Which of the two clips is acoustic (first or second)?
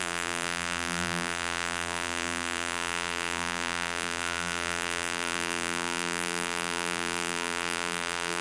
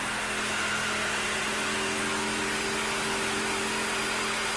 second